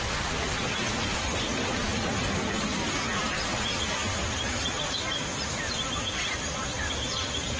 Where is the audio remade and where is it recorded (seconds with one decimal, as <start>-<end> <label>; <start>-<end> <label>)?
0.0-7.6 recorded